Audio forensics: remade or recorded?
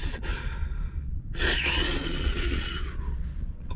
remade